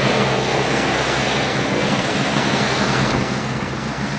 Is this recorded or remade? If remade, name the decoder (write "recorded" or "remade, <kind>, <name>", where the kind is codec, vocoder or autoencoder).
remade, codec, SNAC